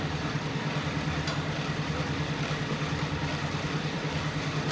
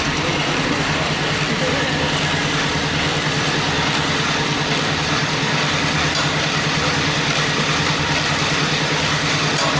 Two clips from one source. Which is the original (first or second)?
second